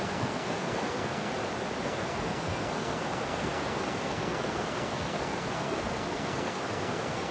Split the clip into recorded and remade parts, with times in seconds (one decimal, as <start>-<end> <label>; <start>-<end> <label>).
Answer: 0.0-1.3 remade; 1.3-1.8 recorded; 1.8-7.3 remade